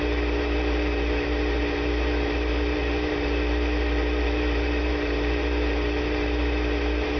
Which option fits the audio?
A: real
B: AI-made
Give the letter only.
B